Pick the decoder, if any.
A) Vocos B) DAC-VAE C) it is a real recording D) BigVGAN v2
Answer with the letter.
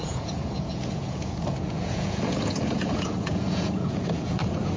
A